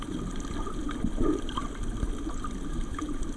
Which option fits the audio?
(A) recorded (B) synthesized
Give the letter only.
A